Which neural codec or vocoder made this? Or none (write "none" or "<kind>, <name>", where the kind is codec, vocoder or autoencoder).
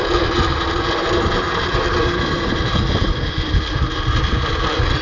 vocoder, BigVGAN v2